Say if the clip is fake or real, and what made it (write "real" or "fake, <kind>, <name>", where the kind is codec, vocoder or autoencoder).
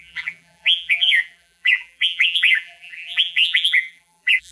fake, vocoder, BigVGAN v2